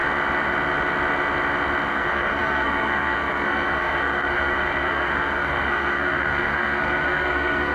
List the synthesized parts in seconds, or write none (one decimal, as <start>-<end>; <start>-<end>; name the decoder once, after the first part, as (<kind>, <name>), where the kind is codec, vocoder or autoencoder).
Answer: 1.9-7.7 (codec, SNAC)